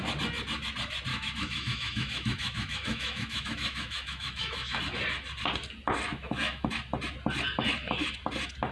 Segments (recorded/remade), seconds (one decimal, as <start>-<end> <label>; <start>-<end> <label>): 0.0-1.1 recorded; 1.1-4.8 remade; 4.8-6.1 recorded; 6.1-6.7 remade; 6.7-8.7 recorded